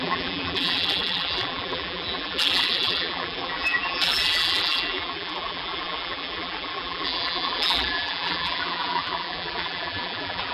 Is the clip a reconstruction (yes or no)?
yes